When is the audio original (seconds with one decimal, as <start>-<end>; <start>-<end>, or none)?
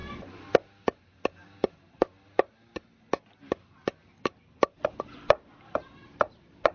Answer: 0.0-0.8; 1.4-1.9